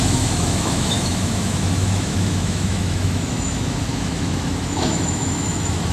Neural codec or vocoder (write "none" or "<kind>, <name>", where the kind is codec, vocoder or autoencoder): autoencoder, DAC-VAE